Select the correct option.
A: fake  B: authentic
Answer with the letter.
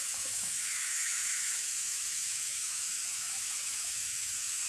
A